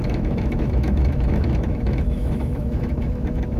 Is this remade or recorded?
remade